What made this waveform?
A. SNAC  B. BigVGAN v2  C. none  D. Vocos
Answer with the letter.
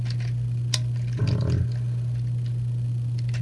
C